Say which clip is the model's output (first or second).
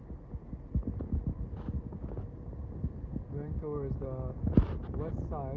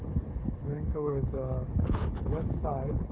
second